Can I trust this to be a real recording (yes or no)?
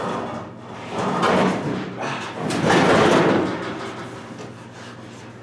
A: yes